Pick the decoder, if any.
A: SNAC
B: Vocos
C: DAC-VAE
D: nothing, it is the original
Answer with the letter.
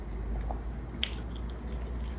D